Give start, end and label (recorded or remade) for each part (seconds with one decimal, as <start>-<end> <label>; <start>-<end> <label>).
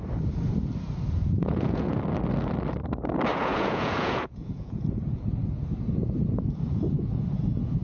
0.0-1.2 recorded; 1.2-2.0 remade; 2.0-3.3 recorded; 3.3-7.8 remade